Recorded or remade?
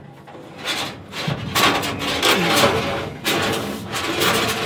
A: recorded